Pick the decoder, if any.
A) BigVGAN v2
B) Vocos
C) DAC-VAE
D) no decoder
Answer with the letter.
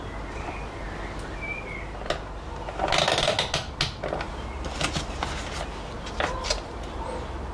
D